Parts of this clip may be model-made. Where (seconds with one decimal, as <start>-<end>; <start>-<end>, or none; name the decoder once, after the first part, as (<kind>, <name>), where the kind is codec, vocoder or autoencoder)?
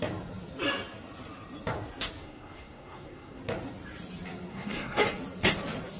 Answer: 2.2-3.4 (codec, SNAC); 4.5-5.0